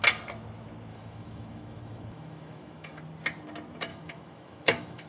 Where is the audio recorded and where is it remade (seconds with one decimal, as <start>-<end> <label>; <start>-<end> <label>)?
0.0-0.9 recorded; 0.9-3.0 remade; 3.0-3.9 recorded; 3.9-5.1 remade

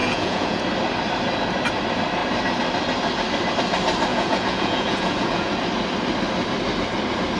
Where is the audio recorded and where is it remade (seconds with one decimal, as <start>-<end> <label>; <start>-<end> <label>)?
0.0-0.6 remade; 0.6-4.1 recorded; 4.1-5.5 remade; 5.5-7.4 recorded

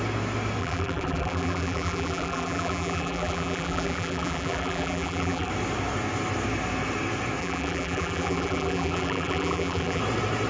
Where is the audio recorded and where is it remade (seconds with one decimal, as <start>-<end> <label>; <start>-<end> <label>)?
0.0-0.6 recorded; 0.6-5.5 remade; 5.5-7.4 recorded; 7.4-10.0 remade; 10.0-10.5 recorded

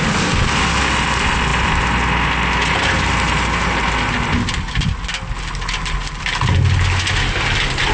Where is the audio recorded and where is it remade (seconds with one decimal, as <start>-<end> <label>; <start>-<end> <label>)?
0.0-7.9 recorded